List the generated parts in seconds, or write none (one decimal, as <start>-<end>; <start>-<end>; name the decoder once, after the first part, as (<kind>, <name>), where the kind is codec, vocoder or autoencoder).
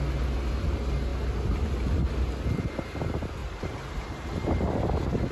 3.4-4.7 (vocoder, BigVGAN v2)